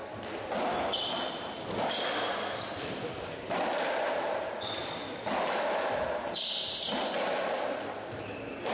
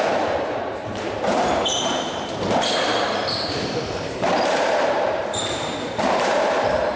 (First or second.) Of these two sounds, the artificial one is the second